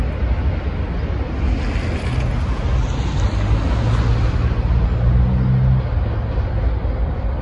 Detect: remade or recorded recorded